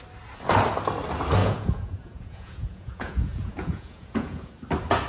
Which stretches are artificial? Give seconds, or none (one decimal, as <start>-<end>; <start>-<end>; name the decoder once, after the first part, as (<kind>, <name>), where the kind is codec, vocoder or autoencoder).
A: 1.4-4.5 (vocoder, Vocos)